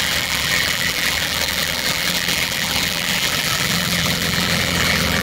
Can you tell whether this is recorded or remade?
remade